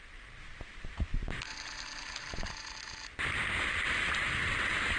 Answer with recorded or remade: recorded